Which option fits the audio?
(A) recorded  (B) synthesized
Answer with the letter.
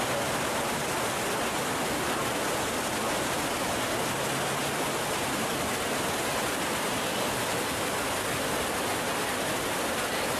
A